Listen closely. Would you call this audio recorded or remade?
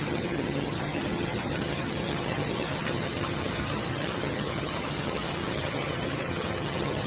remade